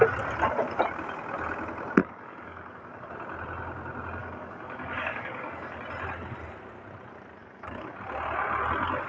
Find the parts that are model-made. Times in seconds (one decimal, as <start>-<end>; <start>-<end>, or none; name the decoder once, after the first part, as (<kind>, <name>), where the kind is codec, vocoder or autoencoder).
2.0-3.1 (codec, DAC); 4.2-5.8; 7.4-8.0